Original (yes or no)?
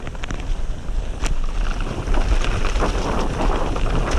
yes